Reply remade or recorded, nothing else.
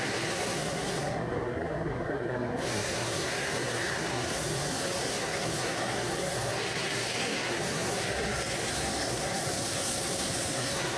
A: remade